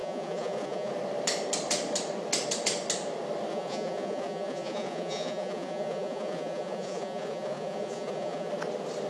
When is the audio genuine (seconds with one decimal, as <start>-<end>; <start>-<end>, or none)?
0.9-3.5; 8.5-9.1